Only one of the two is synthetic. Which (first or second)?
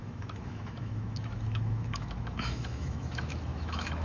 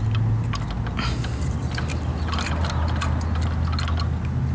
first